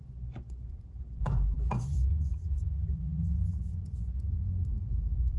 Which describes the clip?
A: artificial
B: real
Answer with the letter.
A